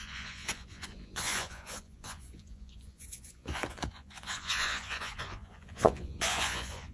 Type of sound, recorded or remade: remade